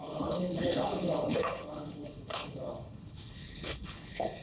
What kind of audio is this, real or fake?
fake